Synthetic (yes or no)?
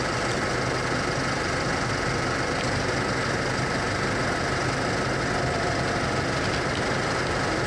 no